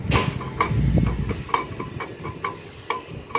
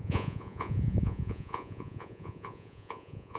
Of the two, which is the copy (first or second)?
second